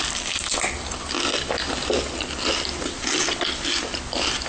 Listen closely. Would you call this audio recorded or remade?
recorded